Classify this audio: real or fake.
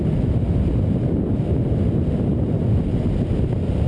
real